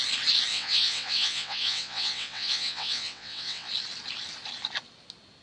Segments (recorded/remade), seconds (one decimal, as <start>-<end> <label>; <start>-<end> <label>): 0.0-0.5 recorded; 0.5-3.7 remade; 3.7-5.4 recorded